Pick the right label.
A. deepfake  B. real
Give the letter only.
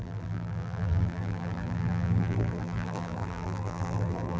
A